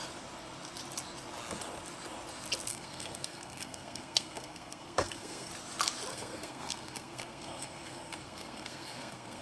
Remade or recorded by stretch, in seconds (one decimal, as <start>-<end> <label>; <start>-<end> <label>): 0.0-2.7 recorded; 2.7-5.5 remade; 5.5-6.1 recorded; 6.1-9.4 remade